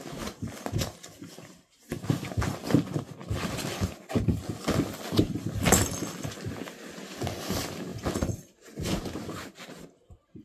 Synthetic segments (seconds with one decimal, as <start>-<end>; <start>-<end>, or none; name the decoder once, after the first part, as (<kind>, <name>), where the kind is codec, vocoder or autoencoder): none